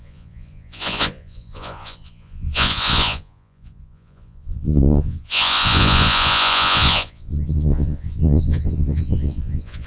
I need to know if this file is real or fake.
fake